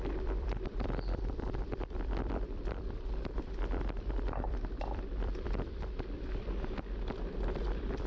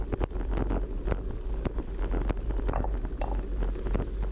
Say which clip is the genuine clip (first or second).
second